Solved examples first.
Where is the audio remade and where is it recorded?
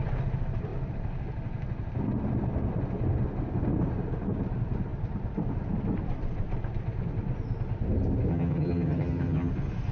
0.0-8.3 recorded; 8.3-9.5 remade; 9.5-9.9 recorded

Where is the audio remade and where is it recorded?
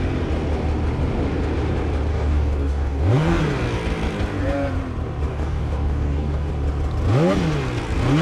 0.0-2.1 recorded; 2.1-3.4 remade; 3.4-5.3 recorded; 5.3-6.5 remade; 6.5-8.2 recorded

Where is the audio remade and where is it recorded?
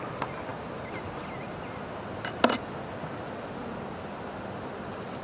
0.0-5.2 recorded